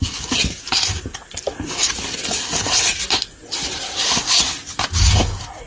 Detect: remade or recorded recorded